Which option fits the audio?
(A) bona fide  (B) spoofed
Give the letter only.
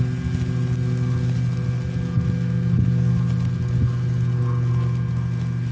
A